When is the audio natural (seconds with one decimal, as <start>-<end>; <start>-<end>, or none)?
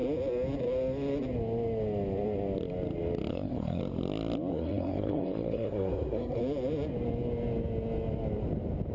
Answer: 0.0-3.3; 3.8-4.5; 6.4-8.9